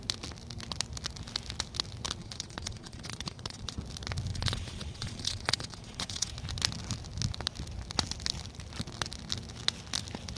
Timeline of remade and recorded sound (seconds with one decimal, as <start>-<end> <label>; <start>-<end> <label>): 0.0-2.2 recorded; 2.2-3.8 remade; 3.8-4.3 recorded; 4.3-6.3 remade; 6.3-10.4 recorded